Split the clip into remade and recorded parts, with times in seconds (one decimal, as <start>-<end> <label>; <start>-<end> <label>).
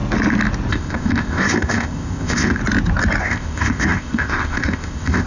0.0-0.7 recorded; 0.7-2.6 remade; 2.6-3.2 recorded; 3.2-5.3 remade